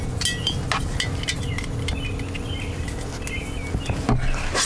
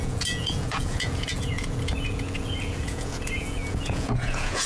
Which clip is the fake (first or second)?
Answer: second